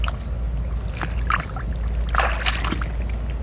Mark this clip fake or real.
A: real